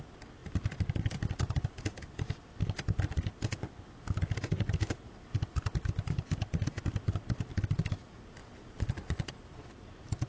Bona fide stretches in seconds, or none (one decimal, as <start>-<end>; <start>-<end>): 0.0-8.4; 9.3-10.3